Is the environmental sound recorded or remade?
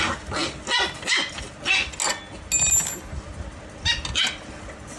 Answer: recorded